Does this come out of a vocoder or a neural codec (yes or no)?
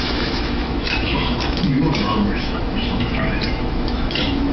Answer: yes